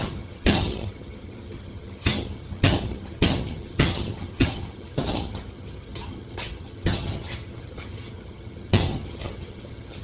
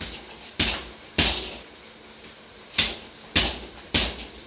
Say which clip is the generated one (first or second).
first